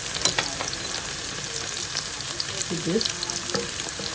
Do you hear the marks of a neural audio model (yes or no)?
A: no